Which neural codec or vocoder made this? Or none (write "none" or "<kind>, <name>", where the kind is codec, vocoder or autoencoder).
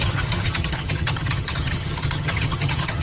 vocoder, HiFi-GAN